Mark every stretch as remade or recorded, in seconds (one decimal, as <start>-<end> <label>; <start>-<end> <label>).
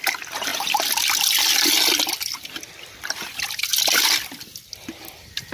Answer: 0.0-5.5 recorded